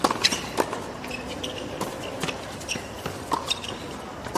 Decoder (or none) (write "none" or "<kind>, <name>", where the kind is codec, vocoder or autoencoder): none